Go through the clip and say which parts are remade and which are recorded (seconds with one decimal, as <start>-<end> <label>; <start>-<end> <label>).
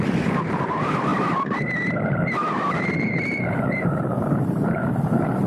0.0-1.1 remade; 1.1-2.6 recorded; 2.6-5.5 remade